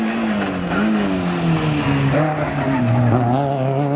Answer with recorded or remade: recorded